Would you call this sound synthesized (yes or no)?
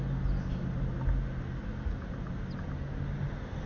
no